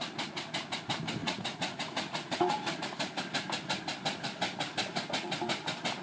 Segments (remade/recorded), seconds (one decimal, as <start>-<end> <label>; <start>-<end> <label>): 0.0-1.2 recorded; 1.2-2.8 remade; 2.8-6.0 recorded